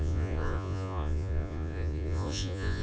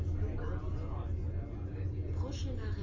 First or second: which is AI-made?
first